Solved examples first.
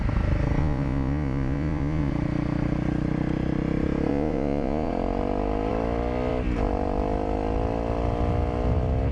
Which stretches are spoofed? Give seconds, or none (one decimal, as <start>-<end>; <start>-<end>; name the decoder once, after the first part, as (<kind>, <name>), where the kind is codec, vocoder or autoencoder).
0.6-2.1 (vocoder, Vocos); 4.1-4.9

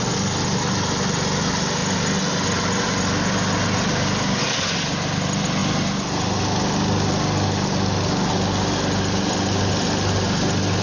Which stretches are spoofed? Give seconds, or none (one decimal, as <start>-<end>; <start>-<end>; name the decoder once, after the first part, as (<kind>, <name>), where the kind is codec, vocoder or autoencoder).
none

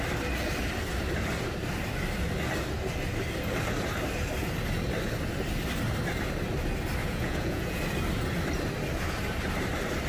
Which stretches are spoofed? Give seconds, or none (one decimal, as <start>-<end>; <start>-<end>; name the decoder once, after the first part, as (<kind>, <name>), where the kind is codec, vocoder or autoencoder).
7.0-7.8 (vocoder, Vocos)

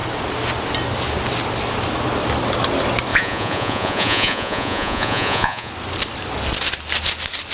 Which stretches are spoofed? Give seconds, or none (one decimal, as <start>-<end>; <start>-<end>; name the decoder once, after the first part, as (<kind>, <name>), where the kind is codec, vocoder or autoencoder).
3.1-5.7 (vocoder, Vocos)

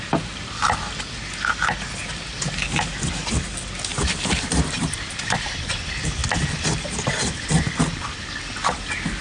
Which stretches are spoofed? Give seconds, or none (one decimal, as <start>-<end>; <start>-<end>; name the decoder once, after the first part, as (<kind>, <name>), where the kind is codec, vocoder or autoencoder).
3.9-5.6 (vocoder, BigVGAN v2); 6.2-6.8

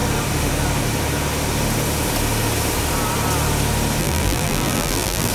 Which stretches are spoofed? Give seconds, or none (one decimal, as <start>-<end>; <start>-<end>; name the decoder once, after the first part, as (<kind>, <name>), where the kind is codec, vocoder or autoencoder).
4.0-5.3 (vocoder, BigVGAN v2)

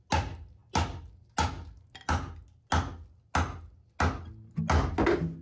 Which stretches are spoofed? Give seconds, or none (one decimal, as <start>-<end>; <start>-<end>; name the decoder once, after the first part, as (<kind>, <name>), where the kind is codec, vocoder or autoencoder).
none